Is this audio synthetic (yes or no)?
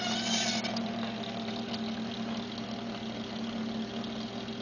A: no